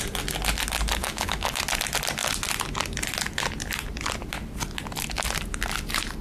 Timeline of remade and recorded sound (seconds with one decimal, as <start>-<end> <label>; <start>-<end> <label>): 0.0-1.0 recorded; 1.0-1.6 remade; 1.6-6.2 recorded